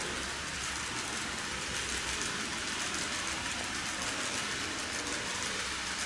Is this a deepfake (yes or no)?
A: no